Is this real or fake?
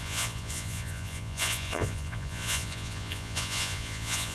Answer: fake